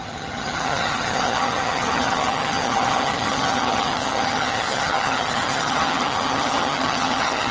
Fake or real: fake